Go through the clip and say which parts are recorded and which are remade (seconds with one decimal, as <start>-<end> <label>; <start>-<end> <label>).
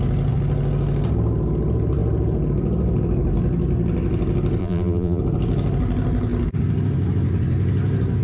0.0-4.6 recorded; 4.6-5.2 remade; 5.2-8.2 recorded